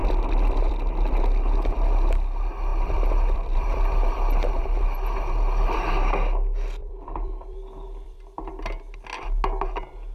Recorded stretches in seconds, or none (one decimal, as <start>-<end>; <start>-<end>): 0.7-2.7; 4.5-6.8; 8.5-10.1